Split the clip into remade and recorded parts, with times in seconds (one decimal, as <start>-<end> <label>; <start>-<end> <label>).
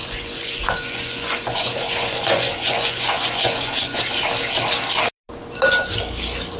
0.0-4.0 remade; 4.0-6.6 recorded